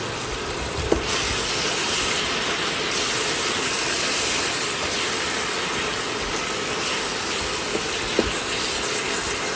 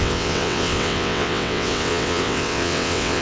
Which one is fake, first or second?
second